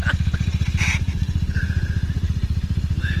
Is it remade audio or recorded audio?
recorded